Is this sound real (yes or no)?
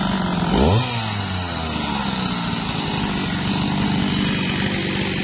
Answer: yes